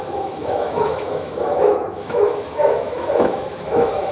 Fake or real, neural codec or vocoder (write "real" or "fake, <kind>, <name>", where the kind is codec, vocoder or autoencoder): fake, autoencoder, DAC-VAE